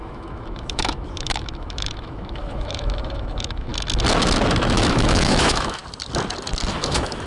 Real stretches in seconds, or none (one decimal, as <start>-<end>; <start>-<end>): 3.7-4.7; 5.8-6.7